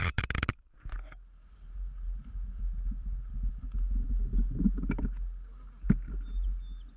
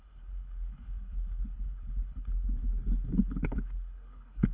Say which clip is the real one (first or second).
first